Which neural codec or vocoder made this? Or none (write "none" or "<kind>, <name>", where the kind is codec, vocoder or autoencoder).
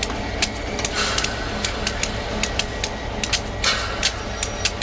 none